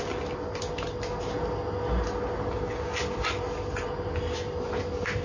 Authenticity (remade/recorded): recorded